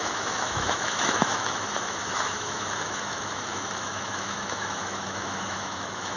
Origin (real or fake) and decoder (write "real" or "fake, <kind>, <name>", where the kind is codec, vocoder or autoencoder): fake, autoencoder, DAC-VAE